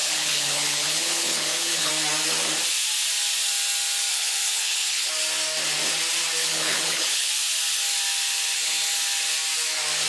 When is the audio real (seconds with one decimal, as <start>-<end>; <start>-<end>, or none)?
1.9-4.1; 5.1-6.4; 7.3-10.1